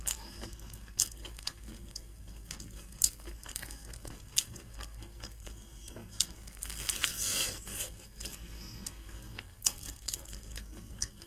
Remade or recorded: remade